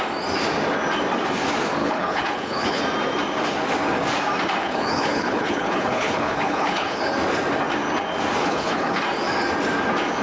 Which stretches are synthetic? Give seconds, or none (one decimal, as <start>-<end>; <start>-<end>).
1.8-2.8; 4.6-7.0; 8.4-9.0